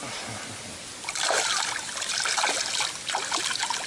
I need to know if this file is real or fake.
real